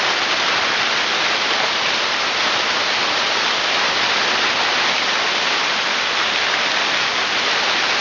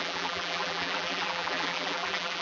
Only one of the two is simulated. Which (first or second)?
second